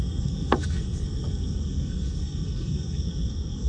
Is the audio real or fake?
fake